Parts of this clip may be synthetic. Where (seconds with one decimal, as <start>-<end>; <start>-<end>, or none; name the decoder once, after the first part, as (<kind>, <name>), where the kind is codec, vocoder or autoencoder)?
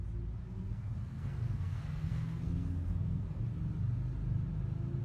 0.4-3.4 (codec, SNAC)